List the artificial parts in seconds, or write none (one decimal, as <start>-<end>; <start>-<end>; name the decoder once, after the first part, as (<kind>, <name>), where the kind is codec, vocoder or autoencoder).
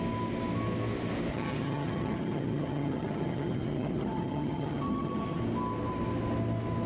1.3-5.4 (vocoder, HiFi-GAN)